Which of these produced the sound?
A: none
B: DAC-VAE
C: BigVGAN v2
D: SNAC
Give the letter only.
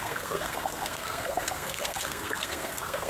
D